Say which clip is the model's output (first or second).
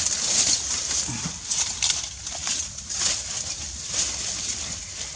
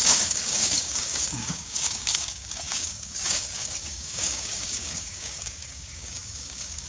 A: second